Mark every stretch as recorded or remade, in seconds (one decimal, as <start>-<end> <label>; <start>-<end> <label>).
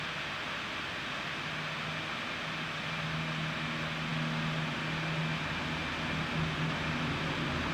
0.0-7.7 recorded